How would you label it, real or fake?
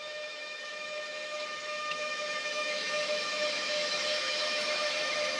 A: fake